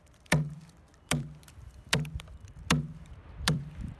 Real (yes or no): no